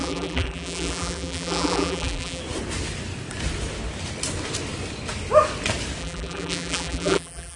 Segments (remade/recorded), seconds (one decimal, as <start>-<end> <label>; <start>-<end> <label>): 0.0-2.4 remade; 2.4-6.0 recorded; 6.0-7.6 remade